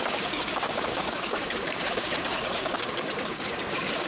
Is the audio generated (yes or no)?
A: yes